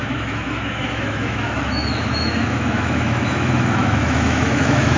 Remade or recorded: remade